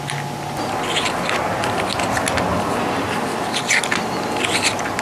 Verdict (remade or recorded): recorded